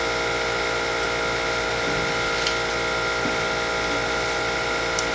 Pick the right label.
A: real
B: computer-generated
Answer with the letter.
A